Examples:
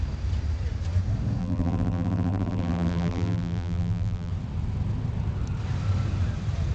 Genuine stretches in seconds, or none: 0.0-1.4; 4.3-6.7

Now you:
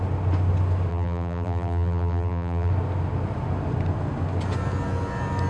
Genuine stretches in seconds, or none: 0.0-0.9; 2.7-5.5

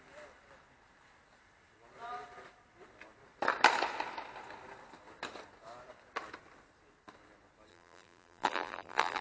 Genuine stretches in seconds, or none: 0.0-7.7

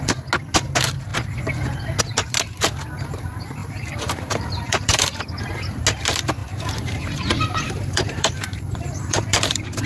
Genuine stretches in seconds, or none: 0.0-3.6; 5.2-6.4

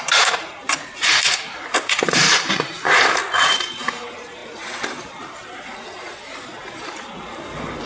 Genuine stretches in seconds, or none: 3.2-3.8

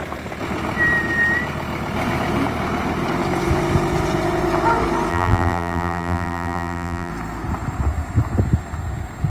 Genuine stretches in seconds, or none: 0.0-5.1; 7.1-9.3

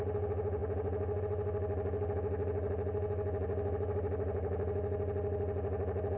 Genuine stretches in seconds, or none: 0.0-6.2